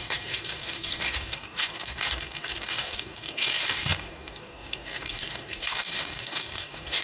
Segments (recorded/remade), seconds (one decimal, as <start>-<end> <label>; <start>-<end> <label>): 0.0-7.0 remade